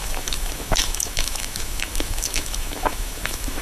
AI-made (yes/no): yes